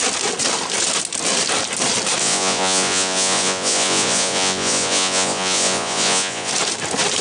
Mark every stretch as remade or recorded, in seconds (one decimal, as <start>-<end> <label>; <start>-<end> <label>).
0.0-2.2 recorded; 2.2-6.5 remade; 6.5-7.2 recorded